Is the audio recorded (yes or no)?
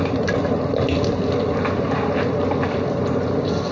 yes